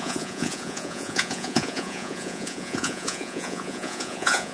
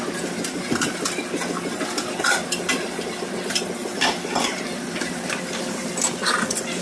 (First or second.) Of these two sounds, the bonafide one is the second